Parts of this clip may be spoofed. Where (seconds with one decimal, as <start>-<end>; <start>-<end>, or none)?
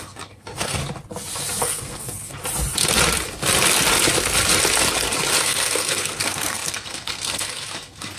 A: 0.0-0.8; 1.6-2.4; 5.4-8.2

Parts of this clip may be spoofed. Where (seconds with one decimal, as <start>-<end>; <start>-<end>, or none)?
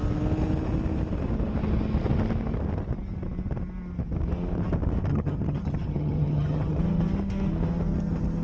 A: 5.1-6.8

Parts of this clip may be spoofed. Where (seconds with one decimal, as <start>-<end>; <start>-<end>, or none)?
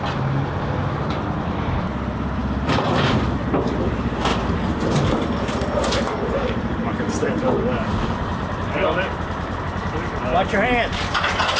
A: 2.4-3.5; 4.3-9.6